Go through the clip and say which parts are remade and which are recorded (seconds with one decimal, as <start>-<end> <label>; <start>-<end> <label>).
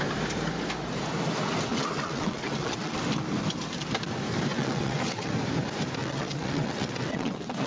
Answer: 0.0-1.7 recorded; 1.7-3.0 remade; 3.0-4.5 recorded; 4.5-5.3 remade; 5.3-6.0 recorded; 6.0-7.7 remade